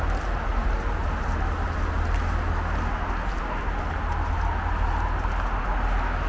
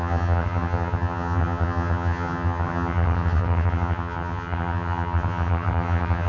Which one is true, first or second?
first